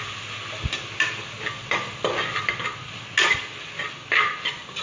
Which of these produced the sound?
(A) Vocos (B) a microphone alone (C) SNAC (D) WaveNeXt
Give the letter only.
B